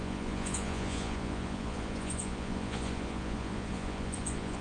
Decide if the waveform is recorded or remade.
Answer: remade